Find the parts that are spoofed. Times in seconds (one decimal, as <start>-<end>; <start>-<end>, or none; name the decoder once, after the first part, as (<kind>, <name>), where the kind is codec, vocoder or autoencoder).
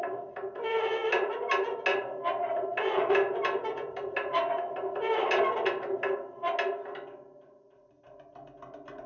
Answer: none